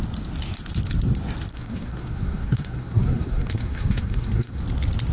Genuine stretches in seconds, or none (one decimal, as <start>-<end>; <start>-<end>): 0.0-1.5; 4.6-5.1